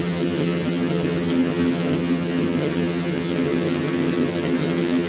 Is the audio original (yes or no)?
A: no